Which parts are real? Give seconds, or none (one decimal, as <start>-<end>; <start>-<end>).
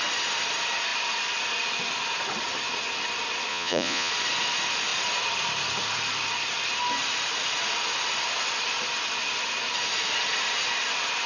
0.0-3.5; 4.1-11.3